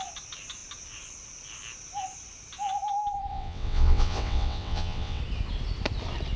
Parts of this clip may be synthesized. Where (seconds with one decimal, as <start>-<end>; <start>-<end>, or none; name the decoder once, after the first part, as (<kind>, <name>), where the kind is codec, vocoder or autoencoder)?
3.3-5.2 (vocoder, WaveNeXt)